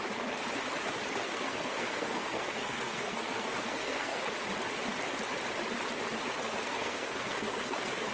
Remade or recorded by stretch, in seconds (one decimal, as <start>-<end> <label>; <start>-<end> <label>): 0.0-1.2 recorded; 1.2-4.2 remade; 4.2-6.4 recorded; 6.4-8.1 remade